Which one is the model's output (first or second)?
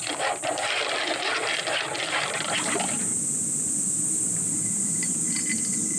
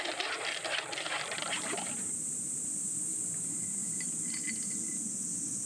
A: second